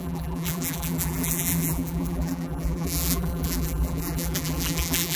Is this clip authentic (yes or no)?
no